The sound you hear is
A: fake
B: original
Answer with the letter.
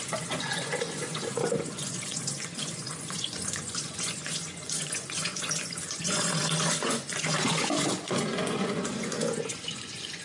A